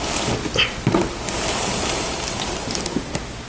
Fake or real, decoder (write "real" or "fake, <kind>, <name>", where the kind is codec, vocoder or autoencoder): real